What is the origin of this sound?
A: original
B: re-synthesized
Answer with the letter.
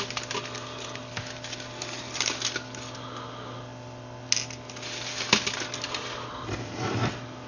A